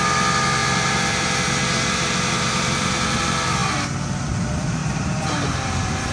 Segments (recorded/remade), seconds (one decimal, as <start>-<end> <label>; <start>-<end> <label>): 0.0-0.6 recorded; 0.6-3.2 remade; 3.2-4.8 recorded; 4.8-6.1 remade